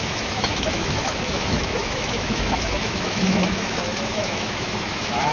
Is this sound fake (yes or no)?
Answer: yes